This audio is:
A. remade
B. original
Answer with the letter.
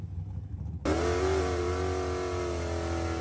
B